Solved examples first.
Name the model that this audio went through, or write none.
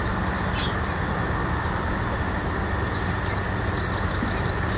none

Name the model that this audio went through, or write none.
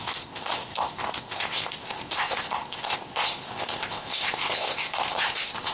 codec, ZipCodec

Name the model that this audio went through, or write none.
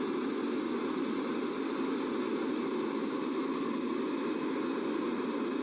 none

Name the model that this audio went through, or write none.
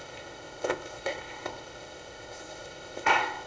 codec, ZipCodec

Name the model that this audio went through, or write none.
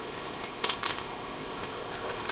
codec, ZipCodec